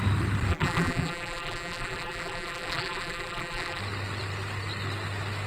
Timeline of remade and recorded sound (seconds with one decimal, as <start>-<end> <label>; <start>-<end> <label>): 0.0-0.5 recorded; 0.5-3.8 remade; 3.8-5.5 recorded